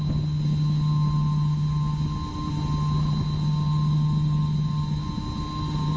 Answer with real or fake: real